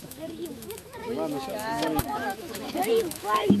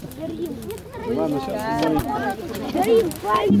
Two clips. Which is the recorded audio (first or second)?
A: second